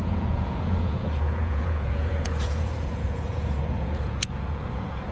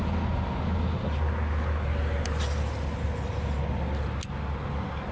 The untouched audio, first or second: second